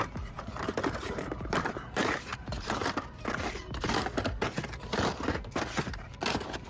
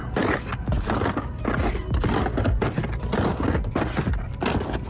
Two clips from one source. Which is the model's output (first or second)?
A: first